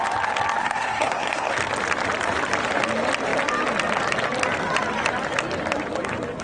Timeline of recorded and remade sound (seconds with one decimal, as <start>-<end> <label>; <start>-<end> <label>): 0.0-0.6 recorded; 0.6-1.5 remade; 1.5-6.4 recorded